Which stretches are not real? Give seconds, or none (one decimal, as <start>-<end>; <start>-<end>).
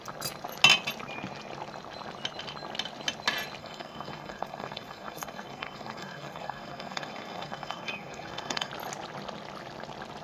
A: 3.6-8.7